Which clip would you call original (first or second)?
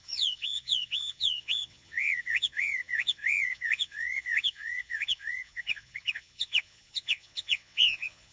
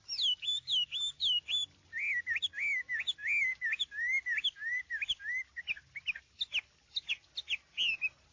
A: second